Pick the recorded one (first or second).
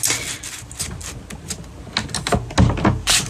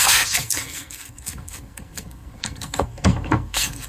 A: first